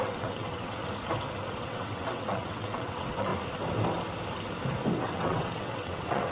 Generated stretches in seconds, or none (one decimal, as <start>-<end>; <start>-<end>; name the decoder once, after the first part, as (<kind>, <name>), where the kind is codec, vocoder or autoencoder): 0.0-0.8 (vocoder, WaveNeXt); 1.6-3.3; 5.0-6.3